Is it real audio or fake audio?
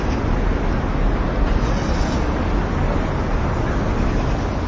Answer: real